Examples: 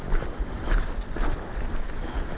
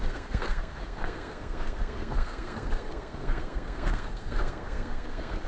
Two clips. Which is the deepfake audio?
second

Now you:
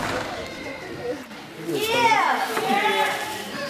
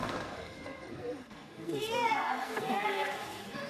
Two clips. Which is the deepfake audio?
second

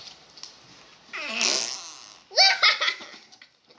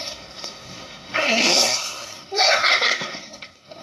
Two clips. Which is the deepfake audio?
second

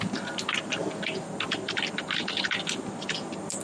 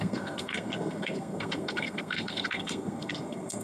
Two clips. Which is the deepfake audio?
second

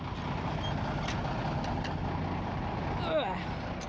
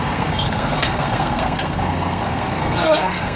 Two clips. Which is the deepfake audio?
second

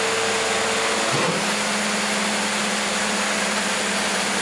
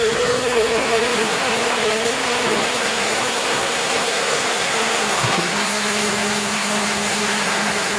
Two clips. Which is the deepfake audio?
second